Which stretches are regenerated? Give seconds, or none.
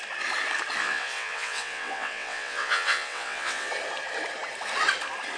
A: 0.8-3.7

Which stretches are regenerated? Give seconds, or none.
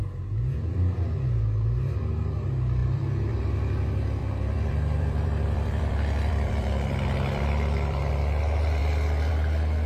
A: 2.8-3.4; 4.2-8.1; 8.8-9.3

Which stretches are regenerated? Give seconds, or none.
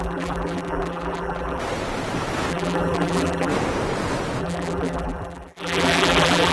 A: 0.0-1.6; 2.5-3.5; 4.4-6.5